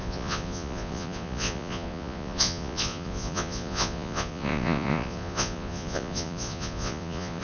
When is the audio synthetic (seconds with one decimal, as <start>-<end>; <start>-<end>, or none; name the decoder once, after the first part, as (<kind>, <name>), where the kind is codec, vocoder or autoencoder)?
0.0-7.4 (vocoder, Vocos)